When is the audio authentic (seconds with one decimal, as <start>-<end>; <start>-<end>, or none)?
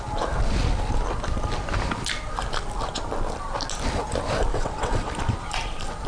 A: 0.0-4.5; 5.1-6.1